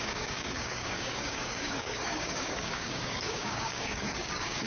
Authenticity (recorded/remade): remade